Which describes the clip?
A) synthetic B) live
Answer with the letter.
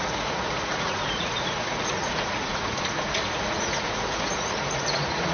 A